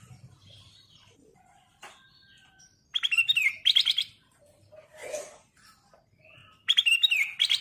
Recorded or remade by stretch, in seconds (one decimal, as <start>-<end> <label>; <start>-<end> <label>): 0.0-2.7 remade; 2.7-3.5 recorded; 3.5-5.0 remade; 5.0-5.9 recorded; 5.9-7.6 remade